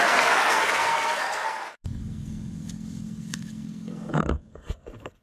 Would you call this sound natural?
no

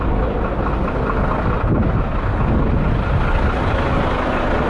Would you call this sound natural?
yes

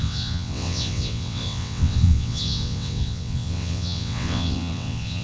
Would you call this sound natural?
no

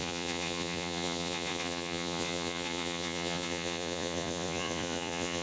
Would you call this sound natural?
no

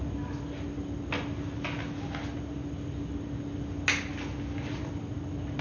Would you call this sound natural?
yes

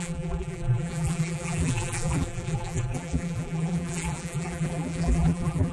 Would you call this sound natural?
no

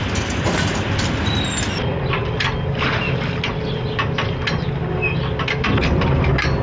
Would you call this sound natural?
yes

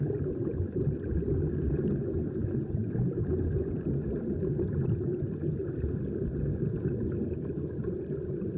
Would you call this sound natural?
yes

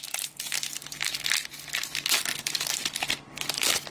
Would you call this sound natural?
yes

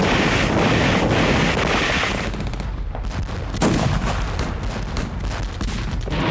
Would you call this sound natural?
yes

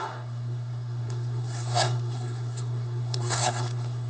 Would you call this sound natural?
no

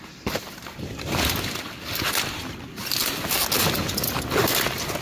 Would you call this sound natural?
yes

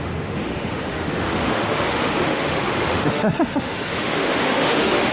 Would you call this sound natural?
no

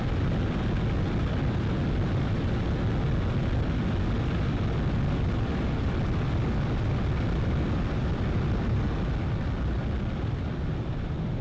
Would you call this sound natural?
yes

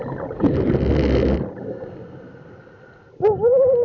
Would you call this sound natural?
yes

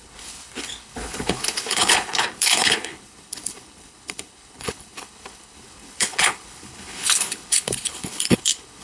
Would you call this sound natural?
no